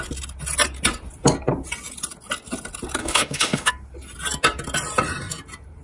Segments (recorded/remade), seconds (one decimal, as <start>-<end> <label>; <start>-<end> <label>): 0.0-3.0 recorded; 3.0-3.7 remade; 3.7-5.8 recorded